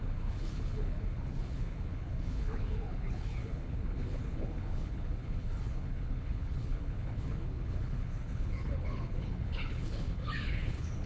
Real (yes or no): no